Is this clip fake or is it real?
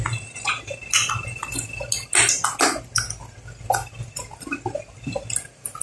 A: real